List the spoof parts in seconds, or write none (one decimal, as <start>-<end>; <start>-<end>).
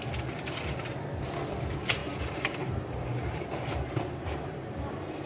2.0-5.3